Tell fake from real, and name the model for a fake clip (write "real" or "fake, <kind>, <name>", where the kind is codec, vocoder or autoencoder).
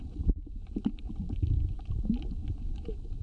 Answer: fake, vocoder, BigVGAN v2